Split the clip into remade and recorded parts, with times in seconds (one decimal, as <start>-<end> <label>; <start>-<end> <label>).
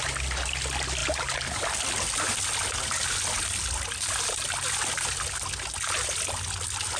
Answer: 0.0-7.0 recorded